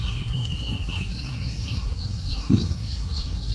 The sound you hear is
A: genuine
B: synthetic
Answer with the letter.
B